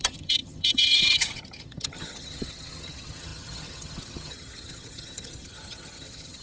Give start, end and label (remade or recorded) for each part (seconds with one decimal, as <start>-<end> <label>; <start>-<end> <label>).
0.0-6.4 remade